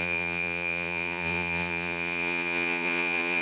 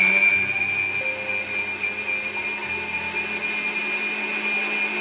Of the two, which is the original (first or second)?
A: second